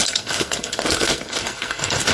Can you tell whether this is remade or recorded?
remade